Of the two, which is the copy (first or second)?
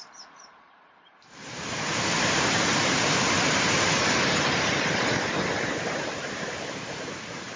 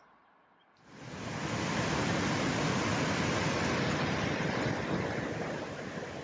first